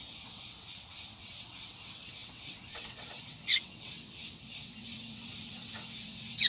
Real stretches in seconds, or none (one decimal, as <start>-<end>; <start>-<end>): none